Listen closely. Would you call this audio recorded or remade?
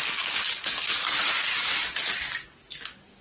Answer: recorded